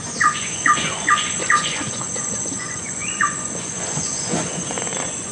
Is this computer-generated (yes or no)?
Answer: yes